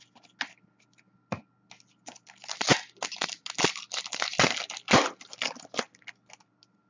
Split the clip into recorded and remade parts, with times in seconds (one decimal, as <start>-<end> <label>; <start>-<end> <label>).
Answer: 0.0-6.9 recorded